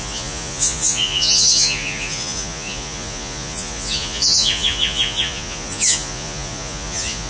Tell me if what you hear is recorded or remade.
remade